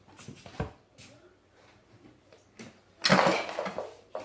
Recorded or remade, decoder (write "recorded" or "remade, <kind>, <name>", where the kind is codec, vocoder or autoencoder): recorded